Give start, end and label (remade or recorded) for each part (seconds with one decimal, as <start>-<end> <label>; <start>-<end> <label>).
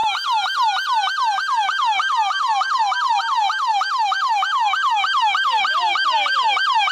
0.0-6.9 recorded